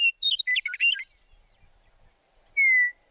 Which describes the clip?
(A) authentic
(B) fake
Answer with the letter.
A